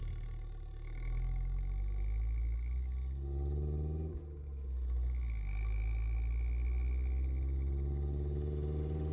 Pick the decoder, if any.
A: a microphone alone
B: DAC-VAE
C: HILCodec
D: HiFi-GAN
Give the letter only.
A